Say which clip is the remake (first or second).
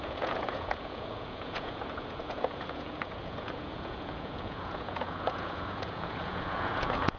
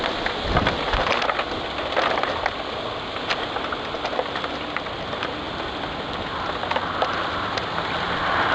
first